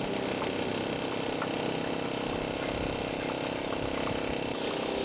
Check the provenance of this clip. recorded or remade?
recorded